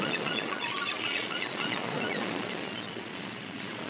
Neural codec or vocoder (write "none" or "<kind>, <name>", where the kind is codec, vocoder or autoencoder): vocoder, Vocos